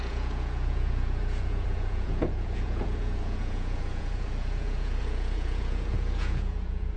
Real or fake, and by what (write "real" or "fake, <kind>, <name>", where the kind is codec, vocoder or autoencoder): fake, vocoder, Vocos